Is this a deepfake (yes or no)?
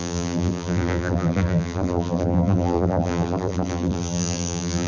yes